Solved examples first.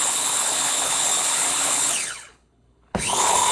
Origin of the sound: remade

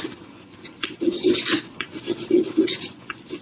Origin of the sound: remade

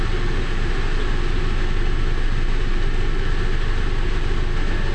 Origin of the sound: recorded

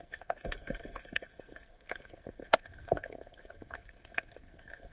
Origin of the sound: remade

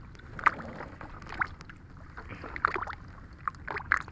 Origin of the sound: recorded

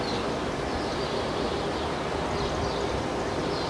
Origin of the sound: recorded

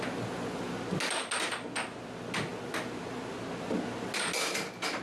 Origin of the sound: recorded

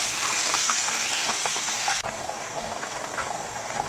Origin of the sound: remade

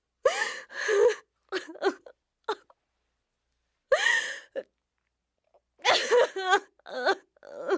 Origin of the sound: recorded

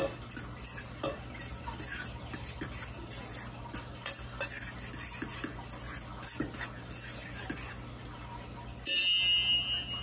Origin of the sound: recorded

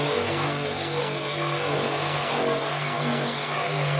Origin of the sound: remade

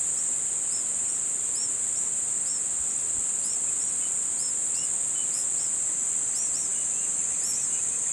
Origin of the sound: recorded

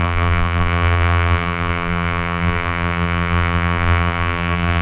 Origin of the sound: remade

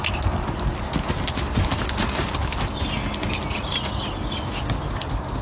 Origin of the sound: recorded